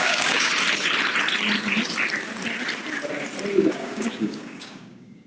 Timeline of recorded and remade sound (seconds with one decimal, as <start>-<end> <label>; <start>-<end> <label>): 0.0-0.5 remade; 0.5-3.7 recorded; 3.7-5.3 remade